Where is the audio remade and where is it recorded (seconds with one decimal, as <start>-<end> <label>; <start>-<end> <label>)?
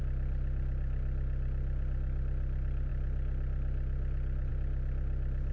0.0-5.5 recorded